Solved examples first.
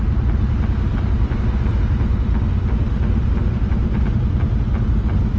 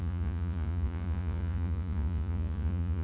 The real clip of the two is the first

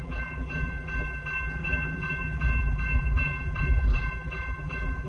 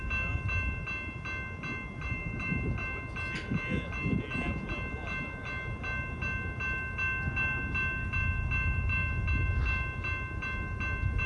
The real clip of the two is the second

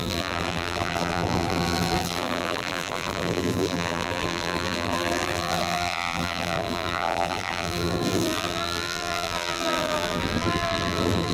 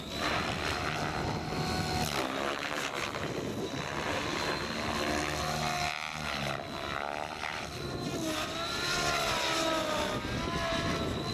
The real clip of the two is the second